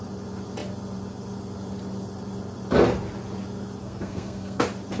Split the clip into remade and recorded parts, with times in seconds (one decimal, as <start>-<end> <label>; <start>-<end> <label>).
0.0-3.8 recorded; 3.8-4.6 remade; 4.6-5.0 recorded